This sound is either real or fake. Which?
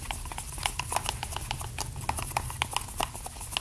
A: real